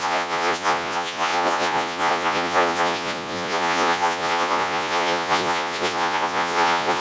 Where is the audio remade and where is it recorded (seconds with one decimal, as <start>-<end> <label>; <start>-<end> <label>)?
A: 0.0-7.0 remade